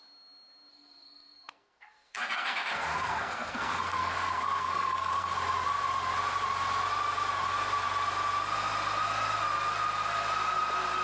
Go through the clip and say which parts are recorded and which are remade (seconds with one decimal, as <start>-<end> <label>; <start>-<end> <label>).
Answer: 0.0-0.7 recorded; 0.7-5.3 remade; 5.3-11.0 recorded